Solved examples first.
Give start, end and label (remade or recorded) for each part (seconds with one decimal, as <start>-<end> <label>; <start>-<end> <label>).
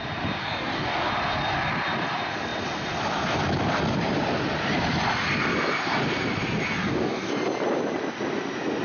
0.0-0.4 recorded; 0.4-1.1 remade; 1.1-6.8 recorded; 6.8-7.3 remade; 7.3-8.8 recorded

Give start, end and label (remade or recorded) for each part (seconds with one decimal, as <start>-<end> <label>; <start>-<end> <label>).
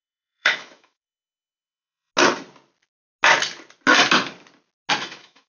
0.0-2.1 remade; 2.1-5.0 recorded; 5.0-5.5 remade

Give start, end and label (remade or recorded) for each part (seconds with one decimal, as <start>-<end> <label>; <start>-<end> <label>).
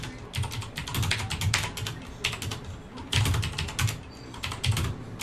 0.0-5.2 recorded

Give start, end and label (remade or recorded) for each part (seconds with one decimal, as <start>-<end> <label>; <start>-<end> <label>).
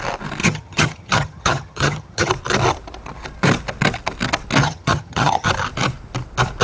0.0-0.4 recorded; 0.4-2.3 remade; 2.3-4.6 recorded; 4.6-5.5 remade; 5.5-6.6 recorded